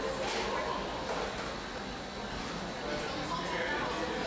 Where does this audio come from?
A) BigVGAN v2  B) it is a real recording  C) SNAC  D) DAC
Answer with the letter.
B